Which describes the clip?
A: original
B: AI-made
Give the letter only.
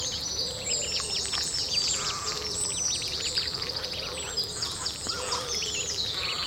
B